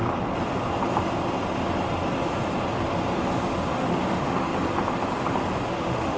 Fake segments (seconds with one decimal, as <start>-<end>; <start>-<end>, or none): 3.7-4.5; 5.7-6.2